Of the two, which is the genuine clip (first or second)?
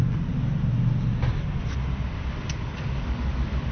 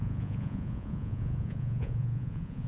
first